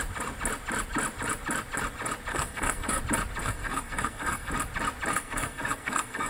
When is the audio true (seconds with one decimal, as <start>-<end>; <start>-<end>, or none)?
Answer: 0.0-2.3; 3.0-3.4; 4.5-5.1